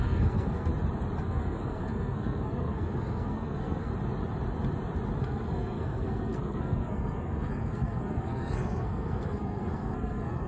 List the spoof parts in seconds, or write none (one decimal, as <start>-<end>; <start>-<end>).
0.0-0.7; 1.2-3.9; 5.2-10.5